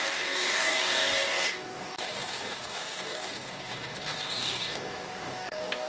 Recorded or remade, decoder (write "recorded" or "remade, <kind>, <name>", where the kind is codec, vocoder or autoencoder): remade, codec, DAC